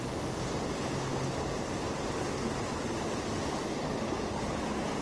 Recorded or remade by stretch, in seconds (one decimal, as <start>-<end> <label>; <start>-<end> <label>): 0.0-5.0 recorded